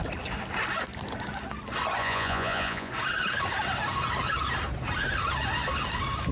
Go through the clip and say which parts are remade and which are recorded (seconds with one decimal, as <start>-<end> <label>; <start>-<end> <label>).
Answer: 0.0-2.0 recorded; 2.0-2.9 remade; 2.9-6.3 recorded